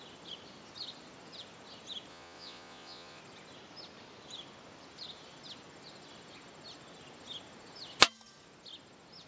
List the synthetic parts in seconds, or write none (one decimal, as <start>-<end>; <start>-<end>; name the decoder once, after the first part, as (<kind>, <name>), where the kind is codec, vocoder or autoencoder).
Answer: 2.1-3.2 (vocoder, Vocos)